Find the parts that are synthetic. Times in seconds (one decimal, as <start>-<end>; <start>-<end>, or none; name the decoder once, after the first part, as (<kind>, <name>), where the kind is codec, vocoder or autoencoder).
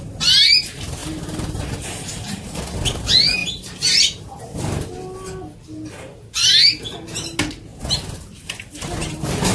1.0-2.6 (vocoder, BigVGAN v2); 3.4-4.4